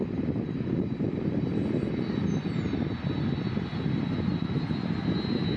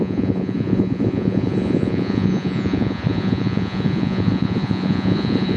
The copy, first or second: second